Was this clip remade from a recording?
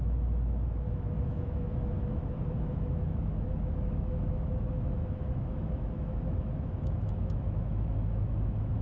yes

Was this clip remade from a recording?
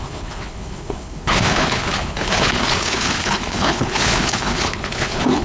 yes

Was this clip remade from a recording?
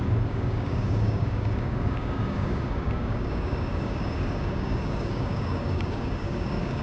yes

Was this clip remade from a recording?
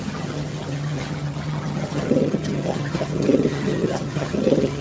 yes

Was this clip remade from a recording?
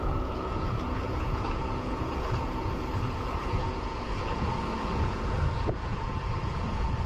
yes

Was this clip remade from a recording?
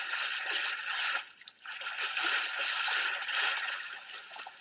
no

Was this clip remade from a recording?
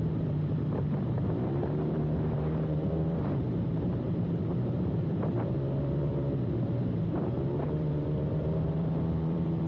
yes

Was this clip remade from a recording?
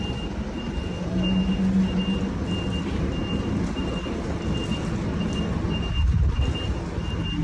no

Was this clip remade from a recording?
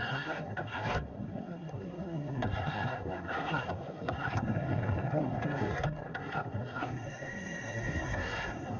yes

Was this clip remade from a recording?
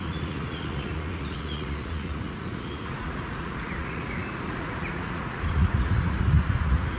yes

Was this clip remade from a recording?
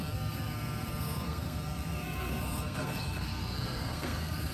yes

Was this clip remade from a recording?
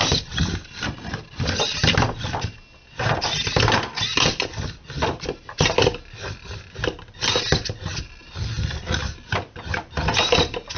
no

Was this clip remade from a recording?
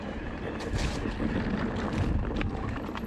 no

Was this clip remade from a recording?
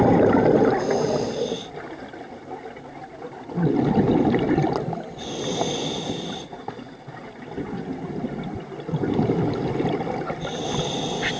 no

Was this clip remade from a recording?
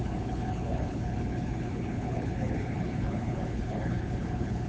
yes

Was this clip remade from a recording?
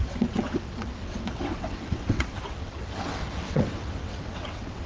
yes